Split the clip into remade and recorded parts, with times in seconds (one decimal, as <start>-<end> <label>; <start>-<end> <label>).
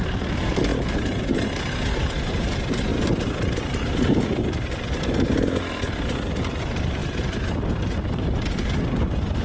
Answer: 0.0-9.4 recorded